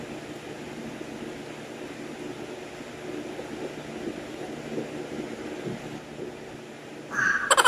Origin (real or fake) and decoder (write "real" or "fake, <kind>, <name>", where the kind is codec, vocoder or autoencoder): real